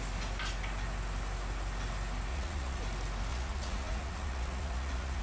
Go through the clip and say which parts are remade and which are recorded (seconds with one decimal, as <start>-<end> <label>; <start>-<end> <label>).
0.0-2.3 recorded; 2.3-2.8 remade; 2.8-3.3 recorded; 3.3-5.2 remade